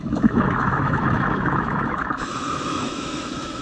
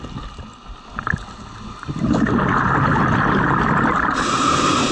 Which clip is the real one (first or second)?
second